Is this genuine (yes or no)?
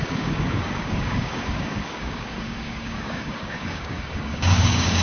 no